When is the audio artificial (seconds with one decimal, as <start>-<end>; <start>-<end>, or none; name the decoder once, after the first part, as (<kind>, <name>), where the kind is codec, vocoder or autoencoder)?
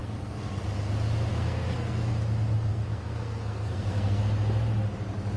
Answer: 0.0-0.6 (codec, SNAC); 1.3-2.1; 2.7-4.2